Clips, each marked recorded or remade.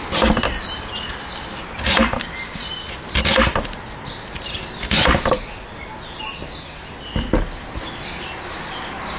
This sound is recorded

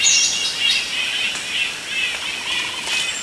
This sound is recorded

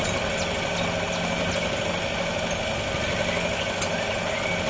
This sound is recorded